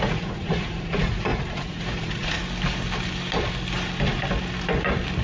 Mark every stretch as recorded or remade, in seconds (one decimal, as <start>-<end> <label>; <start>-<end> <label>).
0.0-2.4 remade; 2.4-5.2 recorded